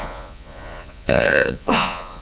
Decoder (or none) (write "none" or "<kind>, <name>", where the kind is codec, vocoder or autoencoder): vocoder, Vocos